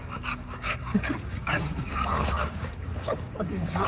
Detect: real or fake fake